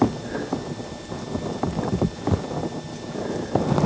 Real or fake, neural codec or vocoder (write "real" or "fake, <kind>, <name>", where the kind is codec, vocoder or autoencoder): real